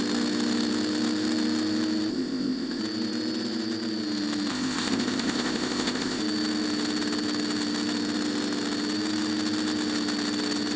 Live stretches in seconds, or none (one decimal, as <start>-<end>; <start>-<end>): 0.0-2.1; 2.8-4.5; 6.2-10.8